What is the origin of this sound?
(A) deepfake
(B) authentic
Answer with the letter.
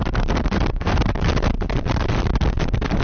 A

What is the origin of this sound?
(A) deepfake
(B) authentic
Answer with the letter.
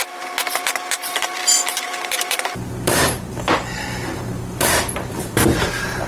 A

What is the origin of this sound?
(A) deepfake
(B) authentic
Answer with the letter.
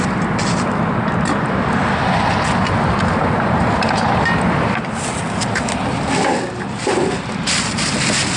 A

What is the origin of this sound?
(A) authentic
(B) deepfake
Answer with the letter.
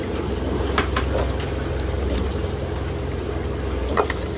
B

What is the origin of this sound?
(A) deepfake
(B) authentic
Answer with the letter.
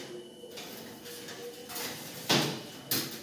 B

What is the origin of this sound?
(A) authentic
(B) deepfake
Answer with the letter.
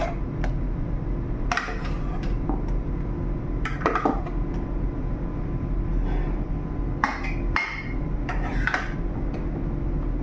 A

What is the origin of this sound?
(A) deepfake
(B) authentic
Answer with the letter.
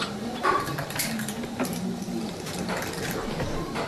A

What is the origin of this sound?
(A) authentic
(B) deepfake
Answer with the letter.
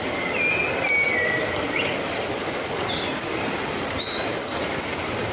A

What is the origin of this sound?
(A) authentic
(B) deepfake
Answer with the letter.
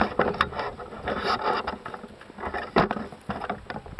A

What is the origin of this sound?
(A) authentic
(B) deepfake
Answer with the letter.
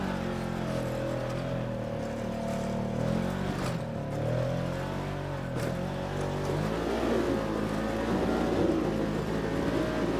A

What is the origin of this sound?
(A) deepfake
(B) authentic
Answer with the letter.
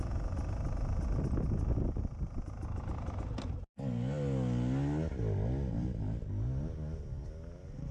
B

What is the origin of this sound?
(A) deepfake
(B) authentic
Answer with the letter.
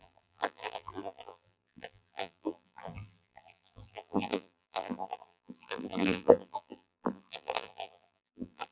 A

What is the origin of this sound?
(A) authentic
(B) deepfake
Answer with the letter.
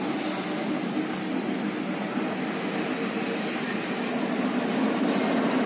A